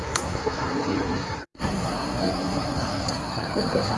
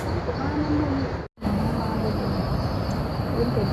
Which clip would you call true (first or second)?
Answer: second